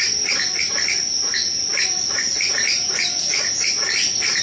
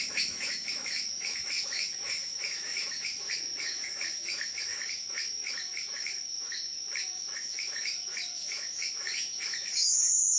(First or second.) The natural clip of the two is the first